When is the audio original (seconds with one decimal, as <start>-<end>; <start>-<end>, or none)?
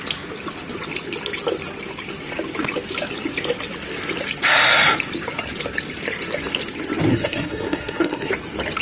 0.0-7.1; 8.3-8.8